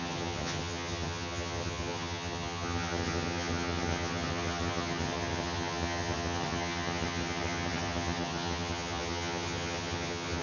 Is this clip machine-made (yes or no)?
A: yes